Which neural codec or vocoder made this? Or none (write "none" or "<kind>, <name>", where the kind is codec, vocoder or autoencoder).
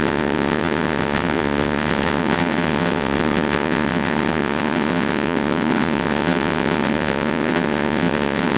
vocoder, WaveNeXt